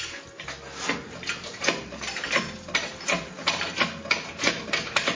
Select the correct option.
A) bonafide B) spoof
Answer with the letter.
A